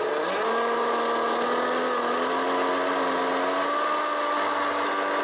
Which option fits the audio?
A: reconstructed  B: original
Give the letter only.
B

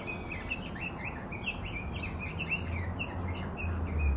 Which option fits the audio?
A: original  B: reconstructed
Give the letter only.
A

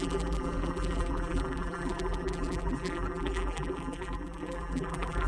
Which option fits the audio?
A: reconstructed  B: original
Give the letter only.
A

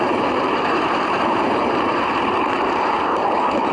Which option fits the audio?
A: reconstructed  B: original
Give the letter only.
A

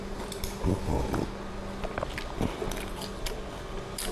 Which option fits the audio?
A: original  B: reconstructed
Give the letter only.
A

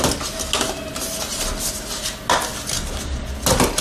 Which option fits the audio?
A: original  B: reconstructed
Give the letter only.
A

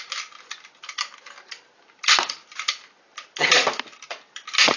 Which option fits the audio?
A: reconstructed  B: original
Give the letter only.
B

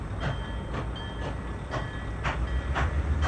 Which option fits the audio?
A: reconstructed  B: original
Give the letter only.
A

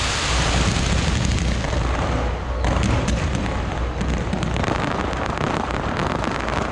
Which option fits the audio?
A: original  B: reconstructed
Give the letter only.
A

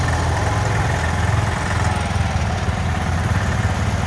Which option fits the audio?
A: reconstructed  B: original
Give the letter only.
B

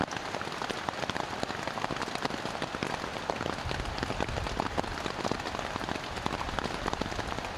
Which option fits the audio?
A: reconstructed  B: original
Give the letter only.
B